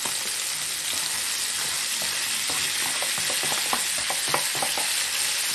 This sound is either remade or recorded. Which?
recorded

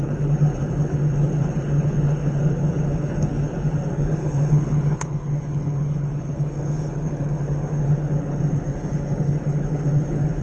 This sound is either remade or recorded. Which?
remade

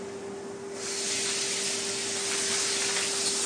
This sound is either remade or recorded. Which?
recorded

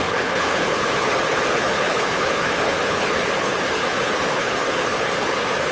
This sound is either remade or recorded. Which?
remade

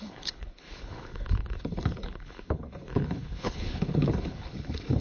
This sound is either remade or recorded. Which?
remade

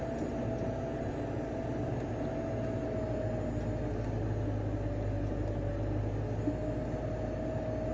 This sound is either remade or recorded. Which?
recorded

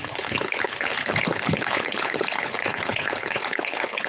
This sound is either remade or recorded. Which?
remade